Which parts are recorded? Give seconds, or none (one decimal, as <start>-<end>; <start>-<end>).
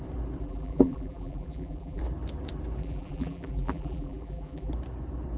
0.0-0.4; 2.0-2.8; 4.7-5.4